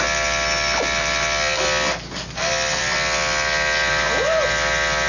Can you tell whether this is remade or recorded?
recorded